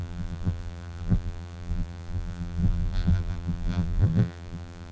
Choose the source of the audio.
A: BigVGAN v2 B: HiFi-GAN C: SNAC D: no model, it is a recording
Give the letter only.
A